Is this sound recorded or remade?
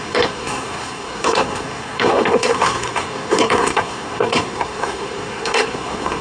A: remade